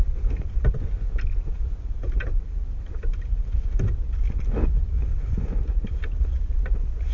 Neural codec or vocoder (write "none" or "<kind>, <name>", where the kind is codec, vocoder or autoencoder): none